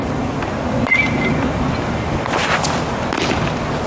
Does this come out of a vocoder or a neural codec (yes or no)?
no